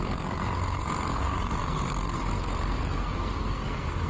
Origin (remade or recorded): remade